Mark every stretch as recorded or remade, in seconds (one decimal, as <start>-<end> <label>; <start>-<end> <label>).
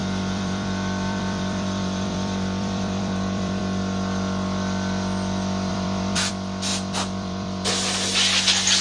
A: 0.0-3.6 remade; 3.6-5.7 recorded; 5.7-6.3 remade; 6.3-6.7 recorded; 6.7-7.7 remade; 7.7-8.8 recorded